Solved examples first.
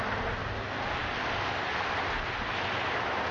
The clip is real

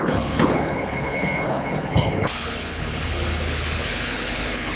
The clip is fake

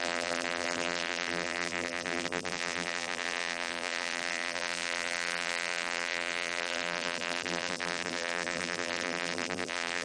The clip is fake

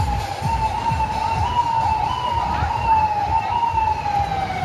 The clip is real